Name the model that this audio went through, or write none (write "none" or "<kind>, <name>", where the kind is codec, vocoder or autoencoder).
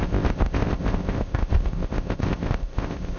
codec, ZipCodec